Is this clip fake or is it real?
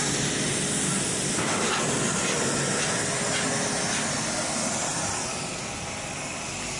real